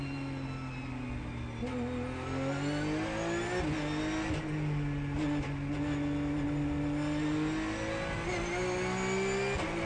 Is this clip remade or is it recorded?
recorded